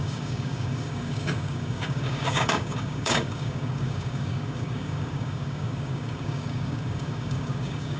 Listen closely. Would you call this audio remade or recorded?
remade